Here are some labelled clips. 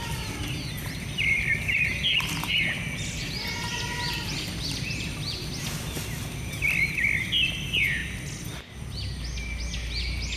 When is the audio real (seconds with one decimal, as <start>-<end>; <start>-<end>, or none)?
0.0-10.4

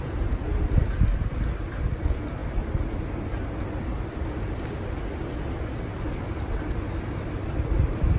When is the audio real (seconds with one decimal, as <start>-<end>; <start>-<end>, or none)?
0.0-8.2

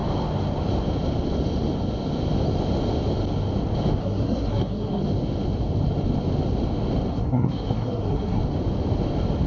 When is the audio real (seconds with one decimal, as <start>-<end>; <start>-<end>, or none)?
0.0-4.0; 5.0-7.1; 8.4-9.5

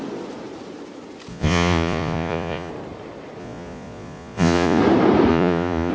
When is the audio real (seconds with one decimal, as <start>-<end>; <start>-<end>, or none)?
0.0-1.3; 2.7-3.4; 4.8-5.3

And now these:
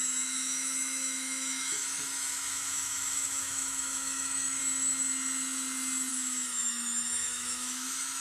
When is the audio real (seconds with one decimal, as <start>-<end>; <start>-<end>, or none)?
4.6-6.1

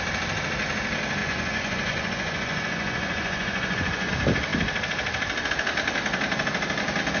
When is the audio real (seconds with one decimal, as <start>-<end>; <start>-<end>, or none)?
0.0-1.2; 4.1-7.2

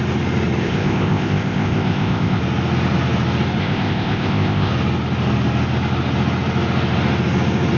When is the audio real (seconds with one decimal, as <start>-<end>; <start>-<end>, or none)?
0.0-0.6; 2.4-3.6; 4.7-7.8

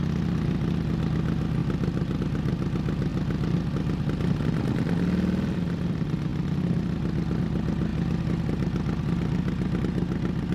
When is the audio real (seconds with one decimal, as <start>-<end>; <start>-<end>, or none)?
0.0-10.5